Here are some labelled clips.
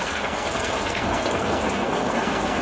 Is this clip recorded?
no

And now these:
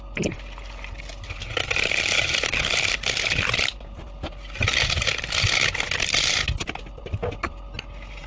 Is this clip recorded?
yes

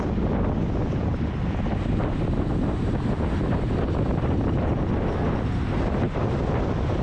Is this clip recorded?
yes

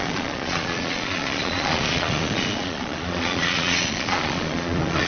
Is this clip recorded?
no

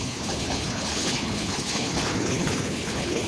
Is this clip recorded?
no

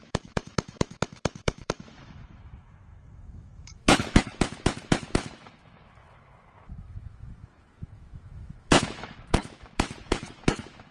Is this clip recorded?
no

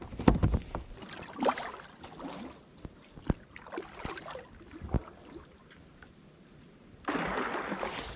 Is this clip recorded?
yes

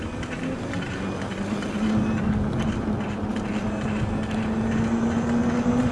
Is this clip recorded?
yes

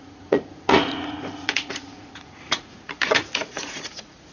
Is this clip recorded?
no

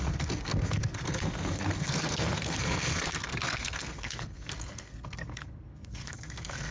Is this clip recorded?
no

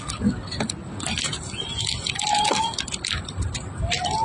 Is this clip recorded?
yes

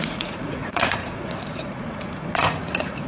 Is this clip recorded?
no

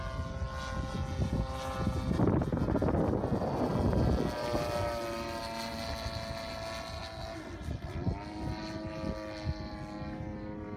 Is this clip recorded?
yes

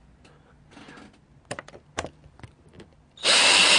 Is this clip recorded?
yes